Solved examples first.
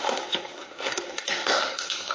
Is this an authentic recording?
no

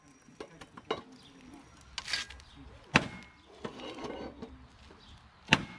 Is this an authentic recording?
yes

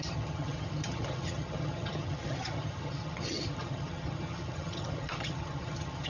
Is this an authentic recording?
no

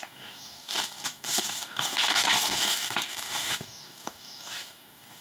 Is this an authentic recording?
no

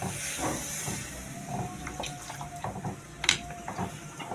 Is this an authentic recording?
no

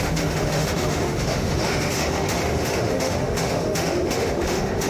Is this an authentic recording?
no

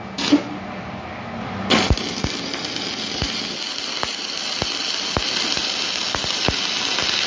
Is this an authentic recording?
yes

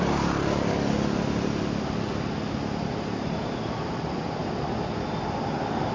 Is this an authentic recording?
yes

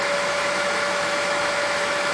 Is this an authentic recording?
no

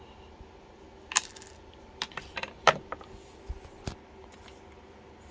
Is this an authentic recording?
yes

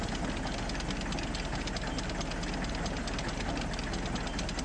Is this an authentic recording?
yes